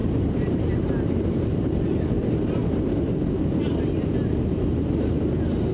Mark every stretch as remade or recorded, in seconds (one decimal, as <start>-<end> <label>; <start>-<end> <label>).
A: 0.0-3.4 remade; 3.4-4.3 recorded; 4.3-5.7 remade